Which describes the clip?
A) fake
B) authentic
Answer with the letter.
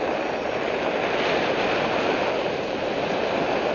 B